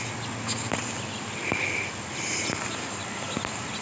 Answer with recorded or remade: recorded